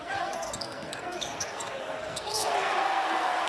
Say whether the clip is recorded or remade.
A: remade